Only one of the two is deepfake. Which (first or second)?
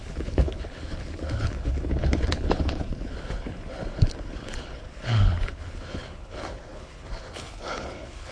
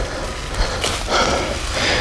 first